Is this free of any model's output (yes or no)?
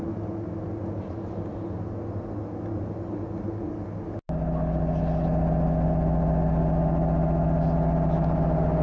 yes